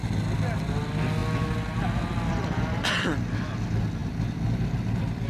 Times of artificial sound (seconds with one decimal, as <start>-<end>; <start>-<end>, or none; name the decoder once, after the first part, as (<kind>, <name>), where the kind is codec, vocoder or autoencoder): none